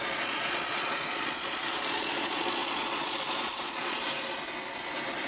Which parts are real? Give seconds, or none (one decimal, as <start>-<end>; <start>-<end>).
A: 4.2-5.3